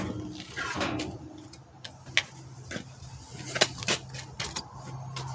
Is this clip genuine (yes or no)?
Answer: yes